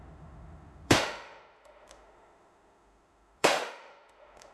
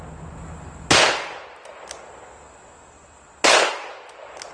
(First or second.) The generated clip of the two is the first